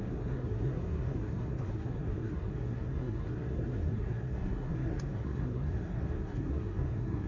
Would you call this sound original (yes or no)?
no